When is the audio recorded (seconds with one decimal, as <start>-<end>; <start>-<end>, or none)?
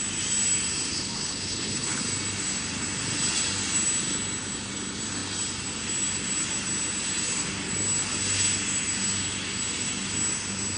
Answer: 0.0-0.9; 2.0-10.8